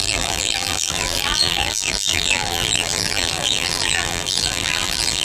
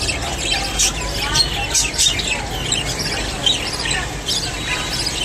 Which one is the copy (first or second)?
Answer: first